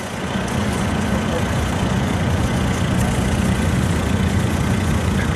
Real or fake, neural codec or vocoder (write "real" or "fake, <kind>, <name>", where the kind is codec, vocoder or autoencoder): fake, vocoder, Vocos